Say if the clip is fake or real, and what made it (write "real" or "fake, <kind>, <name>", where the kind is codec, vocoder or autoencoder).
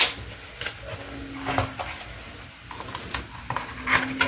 real